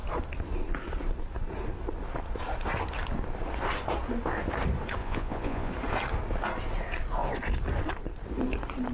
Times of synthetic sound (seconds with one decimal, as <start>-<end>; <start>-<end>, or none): 5.0-5.7